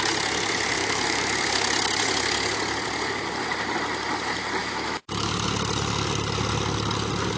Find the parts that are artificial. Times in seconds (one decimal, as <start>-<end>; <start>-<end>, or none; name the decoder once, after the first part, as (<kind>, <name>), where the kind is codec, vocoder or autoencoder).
0.8-1.4 (autoencoder, DAC-VAE); 4.6-5.3